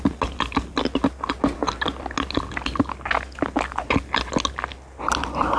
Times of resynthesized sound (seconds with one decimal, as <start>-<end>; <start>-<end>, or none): none